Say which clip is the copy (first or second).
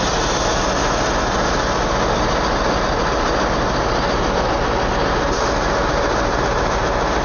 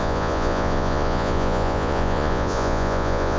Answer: second